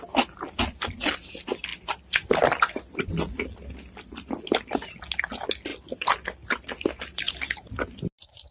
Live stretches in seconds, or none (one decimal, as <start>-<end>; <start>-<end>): 0.0-8.5